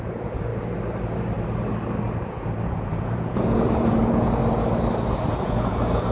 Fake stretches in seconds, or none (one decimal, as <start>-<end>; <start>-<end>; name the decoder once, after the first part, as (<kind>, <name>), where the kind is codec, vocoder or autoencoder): 0.0-0.5 (vocoder, Vocos); 2.2-4.4; 5.3-6.1